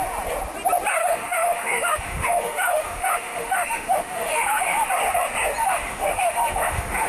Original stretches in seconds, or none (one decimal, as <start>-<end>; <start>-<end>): 0.0-1.0; 4.9-5.6